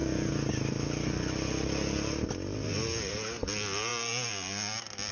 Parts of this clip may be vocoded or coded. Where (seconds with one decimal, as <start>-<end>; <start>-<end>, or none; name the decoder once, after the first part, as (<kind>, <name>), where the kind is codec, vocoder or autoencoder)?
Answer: none